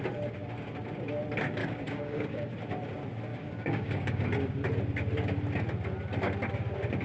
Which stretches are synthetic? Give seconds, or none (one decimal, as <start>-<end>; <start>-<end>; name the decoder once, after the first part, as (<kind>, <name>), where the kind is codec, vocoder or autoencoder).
1.6-2.5 (codec, DAC); 3.3-4.2